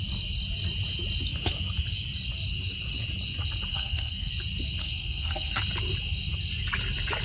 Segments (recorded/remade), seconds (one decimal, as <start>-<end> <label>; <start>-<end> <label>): 0.0-3.7 recorded; 3.7-4.3 remade; 4.3-4.8 recorded; 4.8-5.6 remade; 5.6-7.2 recorded